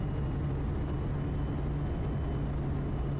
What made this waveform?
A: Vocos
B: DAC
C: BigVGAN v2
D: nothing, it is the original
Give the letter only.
D